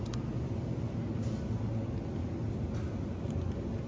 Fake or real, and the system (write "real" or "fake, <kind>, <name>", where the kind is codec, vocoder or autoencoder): real